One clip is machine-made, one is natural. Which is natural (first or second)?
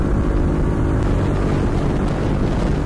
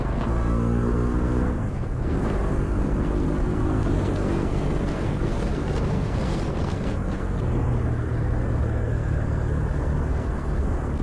first